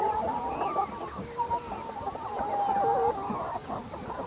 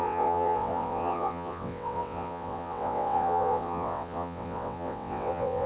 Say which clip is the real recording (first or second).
first